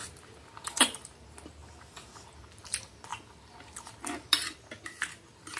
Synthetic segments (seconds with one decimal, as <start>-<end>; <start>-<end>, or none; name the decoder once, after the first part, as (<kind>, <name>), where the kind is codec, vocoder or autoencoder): none